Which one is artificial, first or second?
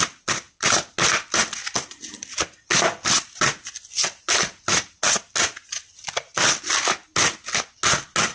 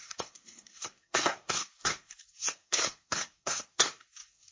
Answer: second